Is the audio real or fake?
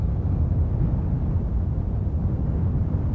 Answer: real